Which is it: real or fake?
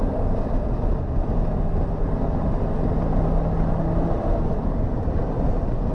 real